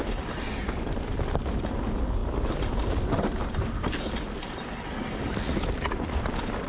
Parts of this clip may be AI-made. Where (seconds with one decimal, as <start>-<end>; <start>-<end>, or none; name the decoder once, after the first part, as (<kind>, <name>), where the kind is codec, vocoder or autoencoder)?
0.0-1.0 (vocoder, BigVGAN v2); 2.2-4.0